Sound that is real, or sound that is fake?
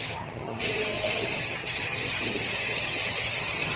fake